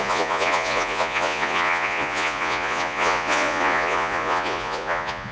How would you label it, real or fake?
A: fake